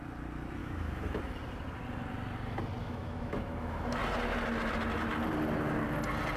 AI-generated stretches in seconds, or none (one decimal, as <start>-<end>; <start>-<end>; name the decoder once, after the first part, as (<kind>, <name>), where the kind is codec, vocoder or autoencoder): 0.6-1.2 (autoencoder, DAC-VAE); 2.8-4.0